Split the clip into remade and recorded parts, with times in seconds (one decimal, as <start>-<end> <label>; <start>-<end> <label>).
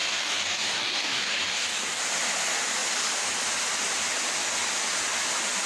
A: 0.0-2.0 remade; 2.0-5.7 recorded